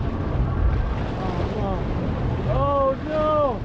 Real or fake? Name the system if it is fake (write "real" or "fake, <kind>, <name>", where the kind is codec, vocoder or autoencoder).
real